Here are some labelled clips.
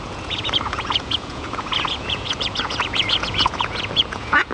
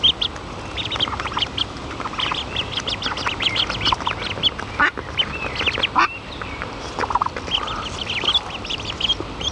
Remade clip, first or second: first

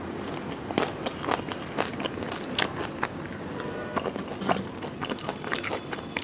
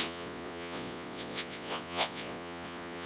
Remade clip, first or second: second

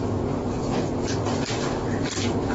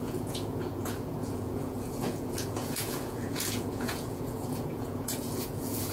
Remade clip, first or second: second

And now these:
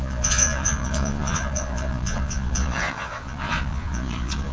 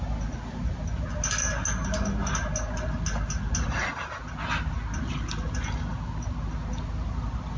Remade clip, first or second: first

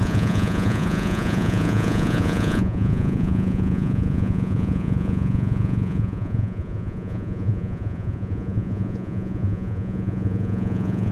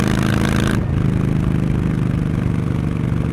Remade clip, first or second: first